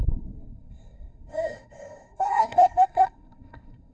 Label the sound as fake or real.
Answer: fake